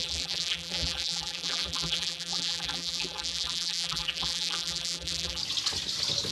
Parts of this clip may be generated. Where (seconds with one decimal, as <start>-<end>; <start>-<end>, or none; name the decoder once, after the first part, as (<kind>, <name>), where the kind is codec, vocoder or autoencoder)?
0.0-5.4 (vocoder, BigVGAN v2)